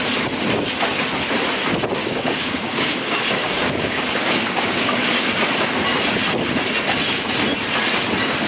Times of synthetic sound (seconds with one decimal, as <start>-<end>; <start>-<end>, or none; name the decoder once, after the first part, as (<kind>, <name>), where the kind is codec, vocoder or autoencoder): 2.0-5.3 (codec, DAC)